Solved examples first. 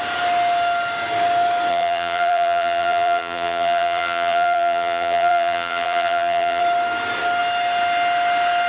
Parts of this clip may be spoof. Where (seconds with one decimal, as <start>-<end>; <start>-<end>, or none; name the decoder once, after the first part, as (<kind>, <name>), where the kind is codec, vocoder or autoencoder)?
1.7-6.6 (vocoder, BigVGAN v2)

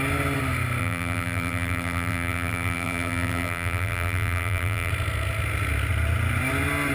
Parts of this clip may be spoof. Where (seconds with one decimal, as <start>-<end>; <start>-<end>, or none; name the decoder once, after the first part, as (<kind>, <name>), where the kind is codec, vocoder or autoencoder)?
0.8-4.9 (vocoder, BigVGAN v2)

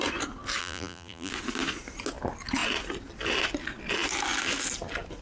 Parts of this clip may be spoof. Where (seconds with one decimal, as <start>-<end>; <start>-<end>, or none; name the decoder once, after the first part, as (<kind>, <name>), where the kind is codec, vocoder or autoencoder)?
0.6-1.3 (vocoder, BigVGAN v2)

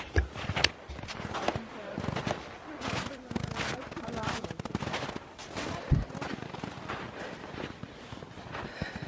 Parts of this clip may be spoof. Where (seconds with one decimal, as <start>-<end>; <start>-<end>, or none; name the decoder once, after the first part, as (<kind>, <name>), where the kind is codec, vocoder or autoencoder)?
none

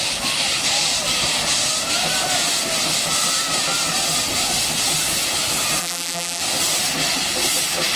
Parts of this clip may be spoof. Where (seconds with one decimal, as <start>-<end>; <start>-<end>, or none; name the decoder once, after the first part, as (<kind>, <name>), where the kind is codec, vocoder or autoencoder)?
5.8-6.4 (vocoder, BigVGAN v2)

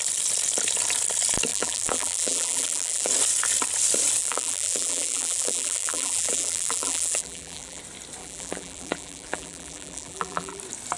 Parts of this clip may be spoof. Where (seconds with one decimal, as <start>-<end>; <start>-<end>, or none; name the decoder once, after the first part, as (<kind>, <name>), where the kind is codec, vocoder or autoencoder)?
1.5-3.1 (vocoder, BigVGAN v2); 4.2-7.8; 8.2-10.6

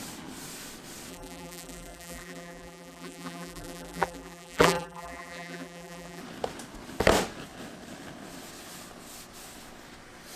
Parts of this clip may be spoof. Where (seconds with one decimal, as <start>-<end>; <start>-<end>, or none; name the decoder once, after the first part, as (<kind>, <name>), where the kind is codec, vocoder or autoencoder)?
1.1-6.2 (vocoder, BigVGAN v2)

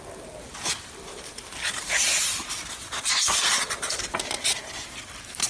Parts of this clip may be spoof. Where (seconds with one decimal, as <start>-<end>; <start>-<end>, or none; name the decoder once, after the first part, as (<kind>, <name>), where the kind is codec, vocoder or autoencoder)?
1.1-4.2 (vocoder, BigVGAN v2)